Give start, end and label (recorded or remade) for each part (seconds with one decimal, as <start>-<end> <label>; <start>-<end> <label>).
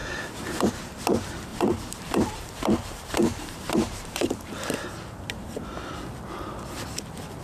0.0-0.7 remade; 0.7-1.5 recorded; 1.5-5.9 remade; 5.9-7.4 recorded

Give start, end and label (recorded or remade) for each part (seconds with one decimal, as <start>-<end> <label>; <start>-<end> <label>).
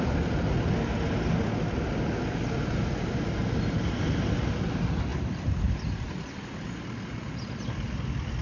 0.0-5.1 recorded; 5.1-7.3 remade; 7.3-8.4 recorded